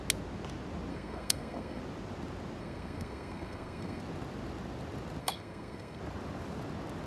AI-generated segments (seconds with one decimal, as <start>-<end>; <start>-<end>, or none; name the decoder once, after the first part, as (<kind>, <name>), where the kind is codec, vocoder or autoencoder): 0.9-1.8 (codec, SNAC); 2.6-4.0; 5.2-6.0